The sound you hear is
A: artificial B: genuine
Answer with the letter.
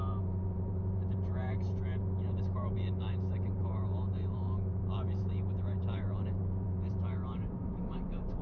A